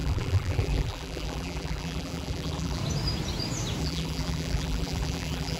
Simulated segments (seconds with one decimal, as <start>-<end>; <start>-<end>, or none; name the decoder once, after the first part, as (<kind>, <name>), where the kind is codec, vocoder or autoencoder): 0.0-2.8 (vocoder, BigVGAN v2); 3.8-5.6